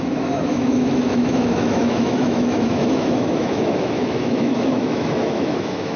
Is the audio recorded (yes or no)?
no